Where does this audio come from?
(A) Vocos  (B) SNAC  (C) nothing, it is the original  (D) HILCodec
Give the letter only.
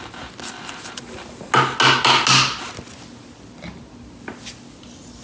C